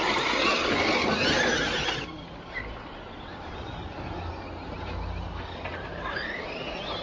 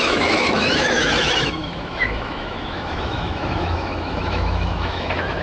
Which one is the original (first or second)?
first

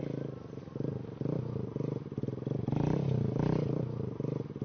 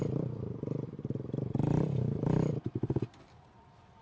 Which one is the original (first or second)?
first